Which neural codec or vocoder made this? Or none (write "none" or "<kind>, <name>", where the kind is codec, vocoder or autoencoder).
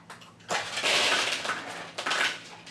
none